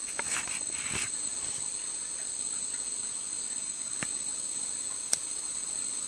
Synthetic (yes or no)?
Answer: no